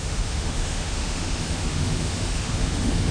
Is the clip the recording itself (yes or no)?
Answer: no